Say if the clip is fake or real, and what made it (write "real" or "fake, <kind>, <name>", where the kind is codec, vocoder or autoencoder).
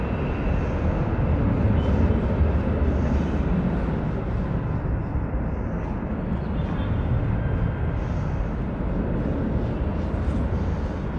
real